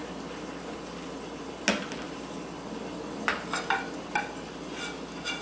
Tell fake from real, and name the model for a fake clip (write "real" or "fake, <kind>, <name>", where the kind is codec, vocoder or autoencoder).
real